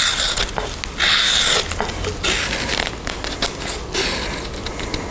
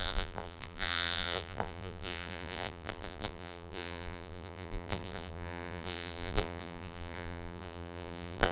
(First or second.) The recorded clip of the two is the first